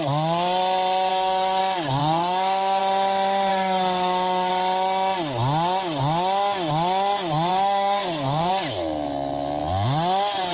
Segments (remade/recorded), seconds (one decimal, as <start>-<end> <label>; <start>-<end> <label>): 0.0-1.1 recorded; 1.1-1.6 remade; 1.6-2.0 recorded; 2.0-2.8 remade; 2.8-3.5 recorded; 3.5-4.5 remade; 4.5-7.5 recorded; 7.5-8.5 remade; 8.5-10.5 recorded